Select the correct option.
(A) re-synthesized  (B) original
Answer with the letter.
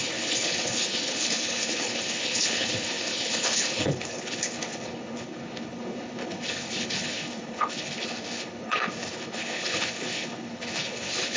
A